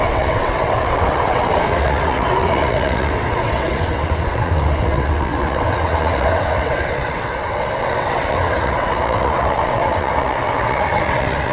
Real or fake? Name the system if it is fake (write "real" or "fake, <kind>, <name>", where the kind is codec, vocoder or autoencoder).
fake, vocoder, WaveNeXt